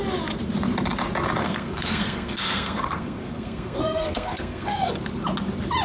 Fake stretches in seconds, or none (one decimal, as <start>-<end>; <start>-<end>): 1.4-4.9